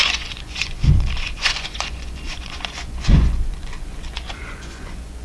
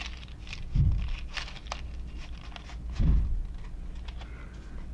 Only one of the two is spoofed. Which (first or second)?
first